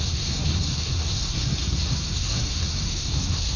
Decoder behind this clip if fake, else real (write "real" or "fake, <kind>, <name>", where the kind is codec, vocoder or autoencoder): fake, codec, SNAC